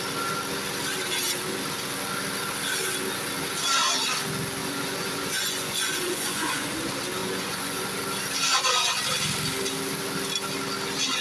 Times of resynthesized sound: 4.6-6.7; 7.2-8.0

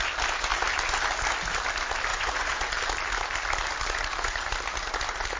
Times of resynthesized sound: 2.1-2.7

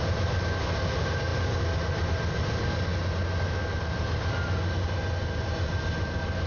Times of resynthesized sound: none